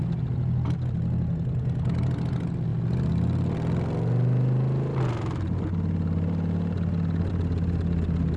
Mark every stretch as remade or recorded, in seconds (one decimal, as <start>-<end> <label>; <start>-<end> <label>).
0.0-8.4 recorded